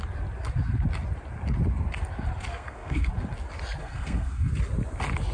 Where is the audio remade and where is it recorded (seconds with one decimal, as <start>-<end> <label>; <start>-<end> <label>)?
0.0-2.5 recorded; 2.5-3.1 remade; 3.1-3.8 recorded; 3.8-4.5 remade; 4.5-5.3 recorded